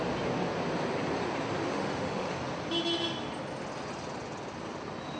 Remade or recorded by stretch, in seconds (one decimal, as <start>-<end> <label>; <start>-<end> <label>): 0.0-1.7 recorded; 1.7-2.3 remade; 2.3-5.2 recorded